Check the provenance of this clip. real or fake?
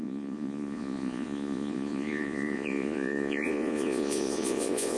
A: fake